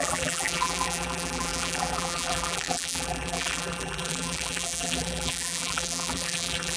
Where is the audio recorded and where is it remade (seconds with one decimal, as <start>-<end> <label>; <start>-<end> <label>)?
0.0-6.8 remade